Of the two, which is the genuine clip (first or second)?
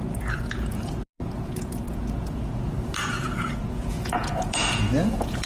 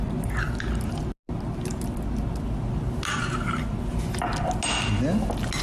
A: second